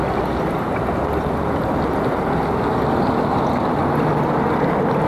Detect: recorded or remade recorded